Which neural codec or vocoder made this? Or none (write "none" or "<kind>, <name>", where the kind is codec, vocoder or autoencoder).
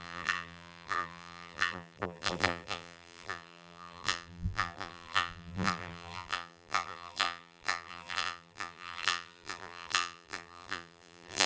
vocoder, BigVGAN v2